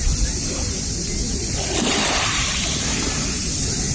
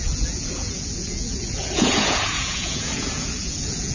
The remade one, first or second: second